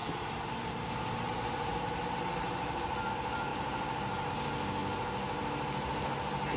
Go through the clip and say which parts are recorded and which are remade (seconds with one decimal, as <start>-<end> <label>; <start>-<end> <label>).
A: 0.0-3.1 remade; 3.1-3.5 recorded; 3.5-4.3 remade; 4.3-6.6 recorded